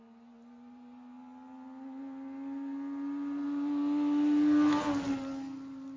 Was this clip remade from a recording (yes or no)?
no